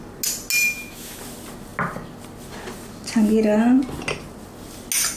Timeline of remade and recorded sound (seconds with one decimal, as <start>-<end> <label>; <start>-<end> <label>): 0.0-0.6 recorded; 0.6-1.2 remade; 1.2-5.2 recorded